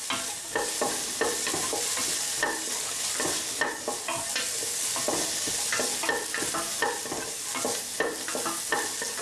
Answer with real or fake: real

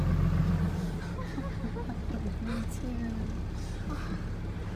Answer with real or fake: real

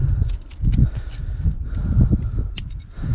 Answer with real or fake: real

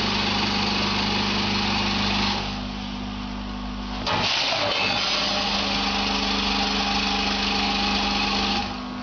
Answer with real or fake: real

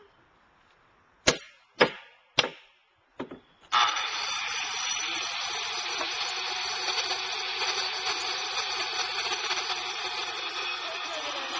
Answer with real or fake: real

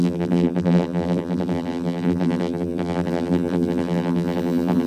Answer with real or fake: fake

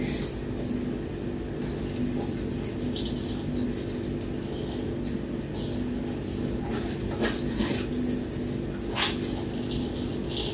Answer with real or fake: real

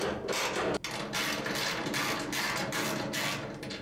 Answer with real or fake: real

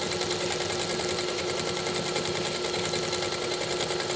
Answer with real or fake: real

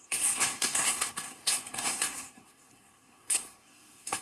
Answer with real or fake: fake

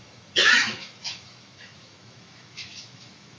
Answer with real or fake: fake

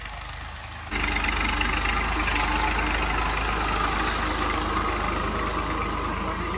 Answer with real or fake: real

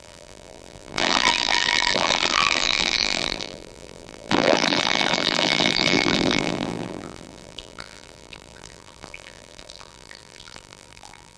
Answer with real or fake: fake